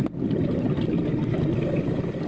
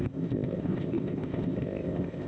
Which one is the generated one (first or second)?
second